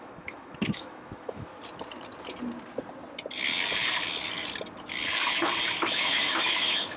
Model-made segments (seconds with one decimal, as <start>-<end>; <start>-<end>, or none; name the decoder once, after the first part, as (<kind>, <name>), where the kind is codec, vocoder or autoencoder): 0.0-1.5 (autoencoder, DAC-VAE); 5.7-7.0